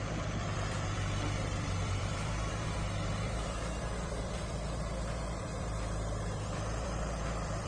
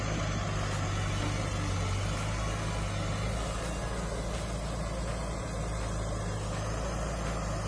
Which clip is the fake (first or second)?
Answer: first